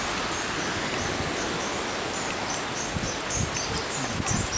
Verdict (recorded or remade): recorded